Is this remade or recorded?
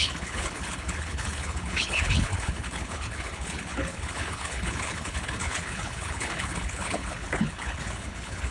remade